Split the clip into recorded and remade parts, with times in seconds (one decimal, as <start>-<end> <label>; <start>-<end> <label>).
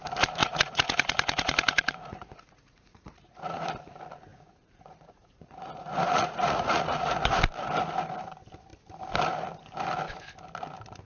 0.0-0.4 recorded; 0.4-3.7 remade; 3.7-4.3 recorded; 4.3-7.4 remade; 7.4-11.1 recorded